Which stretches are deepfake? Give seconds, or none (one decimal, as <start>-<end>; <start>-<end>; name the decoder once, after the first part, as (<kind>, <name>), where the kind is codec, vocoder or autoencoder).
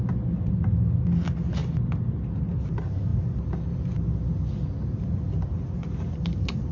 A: none